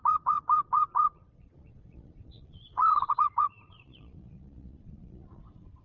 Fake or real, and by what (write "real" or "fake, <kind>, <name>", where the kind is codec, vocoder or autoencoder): fake, vocoder, Vocos